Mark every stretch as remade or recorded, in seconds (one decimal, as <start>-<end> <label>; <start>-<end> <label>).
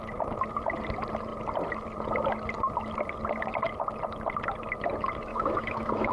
0.0-5.3 recorded; 5.3-6.1 remade